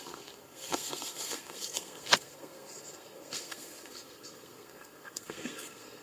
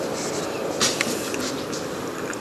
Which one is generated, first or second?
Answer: first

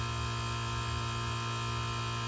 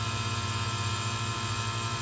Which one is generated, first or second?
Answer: second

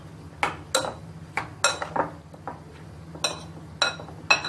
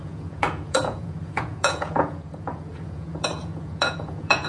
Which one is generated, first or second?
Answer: second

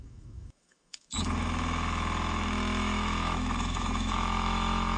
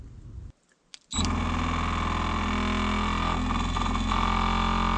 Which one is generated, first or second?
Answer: first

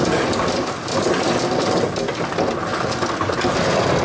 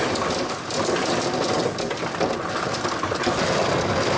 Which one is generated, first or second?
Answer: second